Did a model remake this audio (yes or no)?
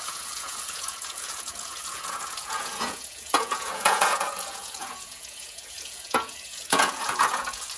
yes